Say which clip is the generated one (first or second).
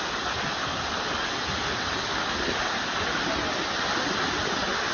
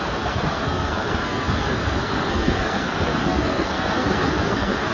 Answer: second